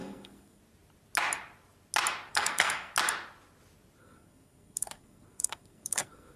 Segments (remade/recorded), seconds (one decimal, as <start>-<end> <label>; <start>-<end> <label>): 0.0-0.6 remade; 0.6-2.3 recorded; 2.3-2.9 remade; 2.9-4.0 recorded; 4.0-6.4 remade